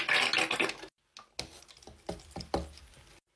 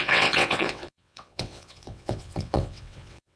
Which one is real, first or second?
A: first